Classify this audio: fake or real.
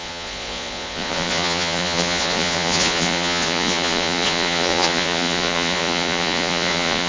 fake